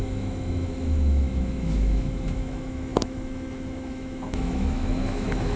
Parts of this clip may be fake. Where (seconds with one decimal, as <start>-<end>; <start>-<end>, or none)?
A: 0.0-5.6